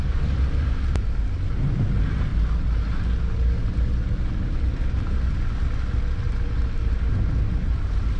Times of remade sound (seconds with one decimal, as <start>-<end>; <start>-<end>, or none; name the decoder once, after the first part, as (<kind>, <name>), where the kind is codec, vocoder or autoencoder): none